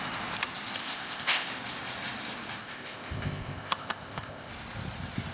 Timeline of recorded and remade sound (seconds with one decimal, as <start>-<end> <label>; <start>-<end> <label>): 0.0-0.8 recorded; 0.8-1.5 remade; 1.5-2.6 recorded; 2.6-4.5 remade; 4.5-5.3 recorded